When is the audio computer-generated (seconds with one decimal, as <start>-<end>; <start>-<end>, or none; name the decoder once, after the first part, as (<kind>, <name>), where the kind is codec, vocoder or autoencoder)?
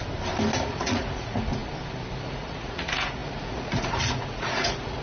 0.6-1.5 (vocoder, Vocos); 2.2-5.0